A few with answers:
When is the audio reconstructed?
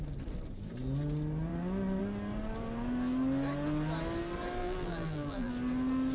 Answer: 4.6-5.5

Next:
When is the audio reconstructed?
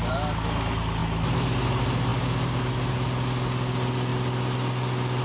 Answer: none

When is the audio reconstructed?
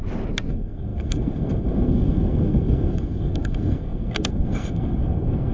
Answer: 0.5-5.5